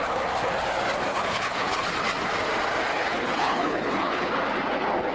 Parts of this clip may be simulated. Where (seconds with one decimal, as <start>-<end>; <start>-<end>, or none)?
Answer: 1.1-1.9; 2.9-4.3